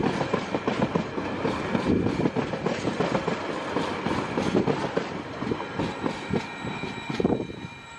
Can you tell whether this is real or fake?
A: fake